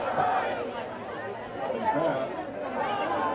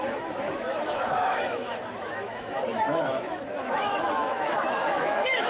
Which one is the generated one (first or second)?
second